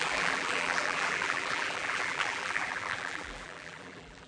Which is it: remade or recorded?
remade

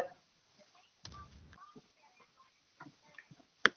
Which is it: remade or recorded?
recorded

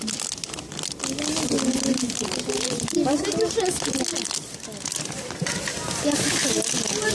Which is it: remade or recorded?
recorded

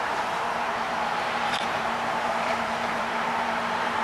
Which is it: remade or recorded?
remade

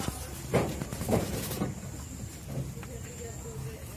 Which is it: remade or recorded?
recorded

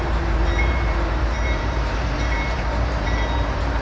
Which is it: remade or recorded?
remade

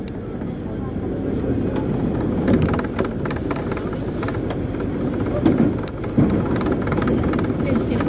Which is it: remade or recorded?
recorded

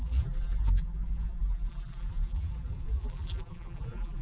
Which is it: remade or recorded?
remade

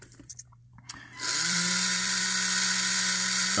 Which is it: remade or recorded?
remade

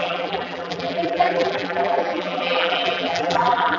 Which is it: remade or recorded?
remade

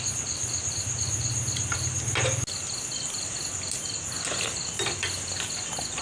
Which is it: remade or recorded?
recorded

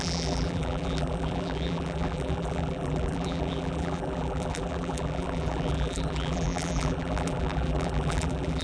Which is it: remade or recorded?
remade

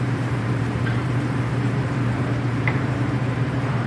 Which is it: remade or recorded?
remade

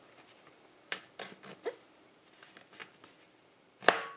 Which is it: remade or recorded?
recorded